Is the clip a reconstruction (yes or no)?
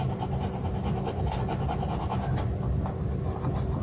no